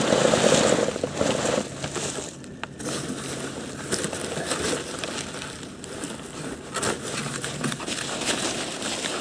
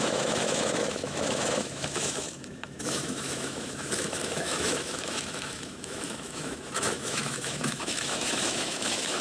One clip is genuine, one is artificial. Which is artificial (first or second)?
second